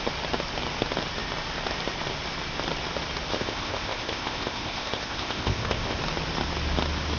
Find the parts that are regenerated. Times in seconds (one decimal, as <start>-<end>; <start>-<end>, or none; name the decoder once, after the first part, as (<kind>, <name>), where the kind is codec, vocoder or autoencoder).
3.3-6.0 (codec, ZipCodec)